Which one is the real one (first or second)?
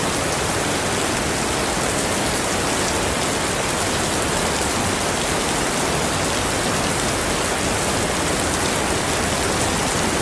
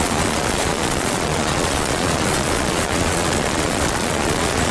first